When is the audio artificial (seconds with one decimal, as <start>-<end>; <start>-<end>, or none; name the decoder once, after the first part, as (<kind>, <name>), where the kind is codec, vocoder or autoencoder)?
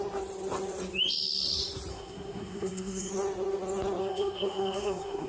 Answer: 1.9-3.1 (codec, SNAC); 4.0-5.3